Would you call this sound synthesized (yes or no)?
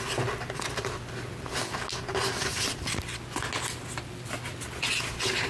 no